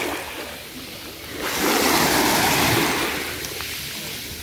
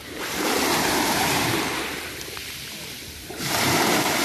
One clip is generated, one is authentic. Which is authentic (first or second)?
first